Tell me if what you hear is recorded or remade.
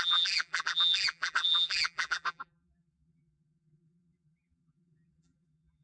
remade